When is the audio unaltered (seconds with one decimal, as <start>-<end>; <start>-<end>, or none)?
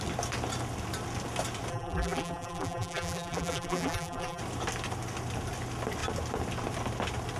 0.0-1.7; 4.4-7.4